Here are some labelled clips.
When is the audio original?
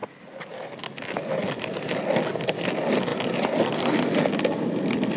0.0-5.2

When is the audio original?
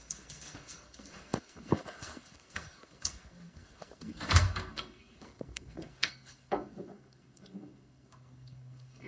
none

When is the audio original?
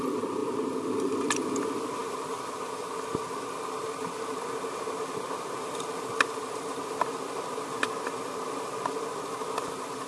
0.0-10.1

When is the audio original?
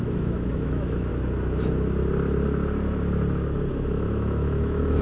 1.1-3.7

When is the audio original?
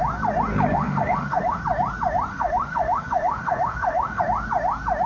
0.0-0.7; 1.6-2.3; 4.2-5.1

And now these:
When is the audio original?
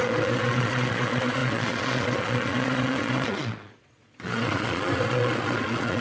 none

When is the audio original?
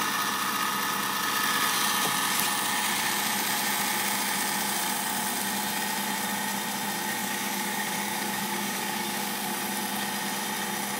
0.0-7.2; 9.6-11.0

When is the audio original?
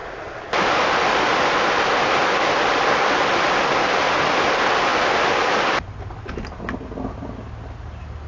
0.0-8.3